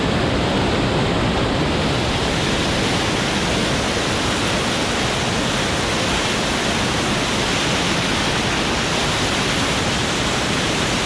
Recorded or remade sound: recorded